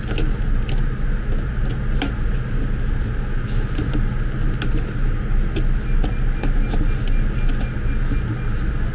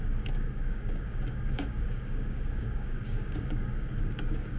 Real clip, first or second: first